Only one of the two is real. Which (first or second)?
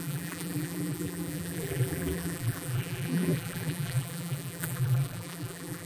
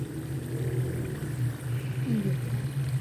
second